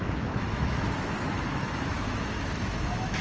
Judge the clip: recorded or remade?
remade